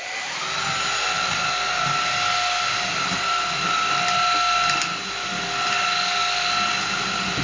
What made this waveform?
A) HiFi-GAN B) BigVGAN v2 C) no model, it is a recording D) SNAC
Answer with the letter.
C